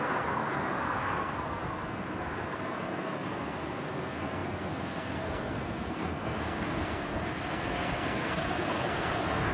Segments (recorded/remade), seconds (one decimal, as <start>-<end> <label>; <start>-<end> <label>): 0.0-9.5 remade